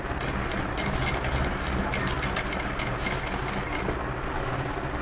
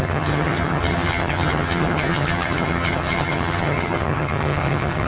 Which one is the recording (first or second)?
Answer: first